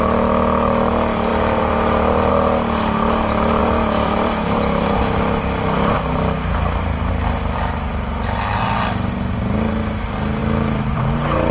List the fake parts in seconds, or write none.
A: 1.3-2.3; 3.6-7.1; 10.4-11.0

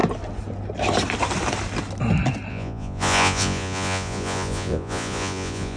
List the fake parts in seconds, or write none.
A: 2.5-5.8

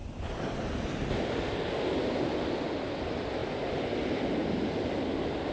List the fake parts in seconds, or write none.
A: 0.0-1.2

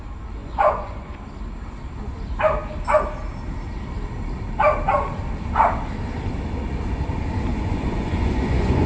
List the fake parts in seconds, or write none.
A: 0.4-1.2; 7.5-8.9

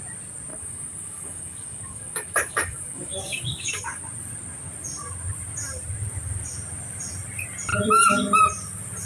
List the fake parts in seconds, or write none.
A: 0.5-4.0